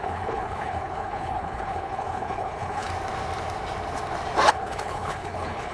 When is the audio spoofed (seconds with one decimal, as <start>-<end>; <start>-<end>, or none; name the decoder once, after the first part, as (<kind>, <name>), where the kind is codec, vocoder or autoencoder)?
0.0-2.9 (codec, HILCodec); 4.5-5.7

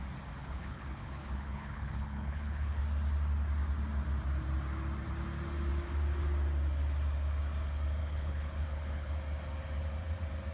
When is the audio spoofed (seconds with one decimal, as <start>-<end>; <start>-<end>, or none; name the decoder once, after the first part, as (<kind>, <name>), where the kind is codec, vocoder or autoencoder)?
0.4-2.8 (codec, HILCodec); 8.0-9.1

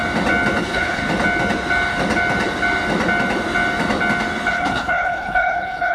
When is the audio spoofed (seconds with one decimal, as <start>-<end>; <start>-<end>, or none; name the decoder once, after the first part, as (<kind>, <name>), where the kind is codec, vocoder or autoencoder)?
0.6-1.0 (codec, HILCodec); 4.5-5.9

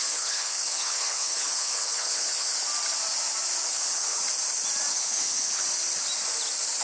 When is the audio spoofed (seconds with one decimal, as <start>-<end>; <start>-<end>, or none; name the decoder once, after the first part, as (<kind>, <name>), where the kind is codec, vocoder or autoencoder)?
0.0-2.5 (codec, HILCodec); 3.7-4.2; 4.9-5.6

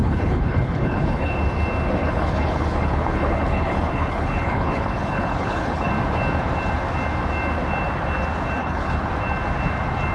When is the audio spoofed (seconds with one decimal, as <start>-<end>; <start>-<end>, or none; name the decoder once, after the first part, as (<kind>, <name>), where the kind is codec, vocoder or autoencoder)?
0.0-1.4 (codec, HILCodec); 2.0-5.9; 8.6-9.1

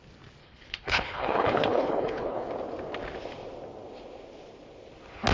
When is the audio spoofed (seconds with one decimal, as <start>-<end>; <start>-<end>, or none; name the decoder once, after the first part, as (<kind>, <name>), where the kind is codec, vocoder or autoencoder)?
0.4-2.5 (codec, HILCodec)